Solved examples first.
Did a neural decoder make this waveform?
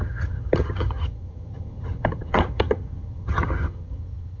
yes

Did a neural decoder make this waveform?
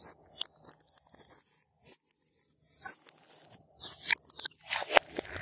no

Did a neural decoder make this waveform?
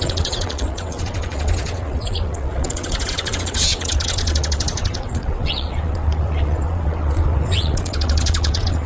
yes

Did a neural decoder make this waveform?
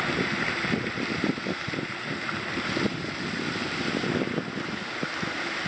no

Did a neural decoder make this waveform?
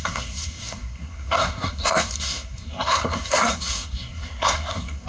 yes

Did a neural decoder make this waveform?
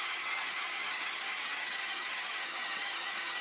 yes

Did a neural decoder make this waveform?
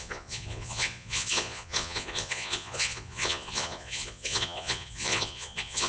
yes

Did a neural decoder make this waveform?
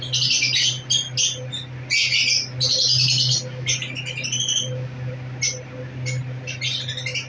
no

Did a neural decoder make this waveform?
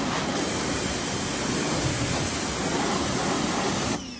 no